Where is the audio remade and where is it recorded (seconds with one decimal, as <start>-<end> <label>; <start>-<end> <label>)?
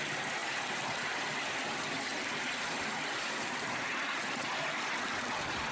0.0-5.7 recorded